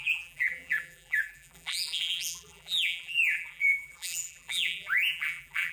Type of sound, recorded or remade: remade